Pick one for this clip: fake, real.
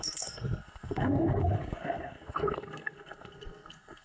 fake